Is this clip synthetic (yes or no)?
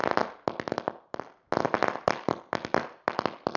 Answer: no